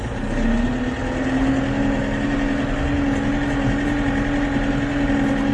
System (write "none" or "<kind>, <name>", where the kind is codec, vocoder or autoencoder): none